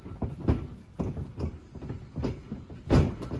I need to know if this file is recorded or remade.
recorded